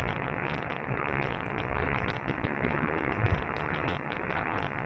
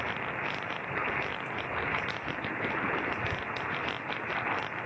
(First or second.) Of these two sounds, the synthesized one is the first